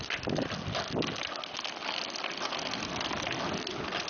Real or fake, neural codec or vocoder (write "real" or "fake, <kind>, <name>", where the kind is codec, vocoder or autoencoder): real